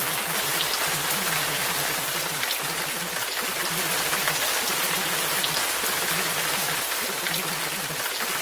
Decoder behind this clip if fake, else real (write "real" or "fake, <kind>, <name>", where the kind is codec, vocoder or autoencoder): real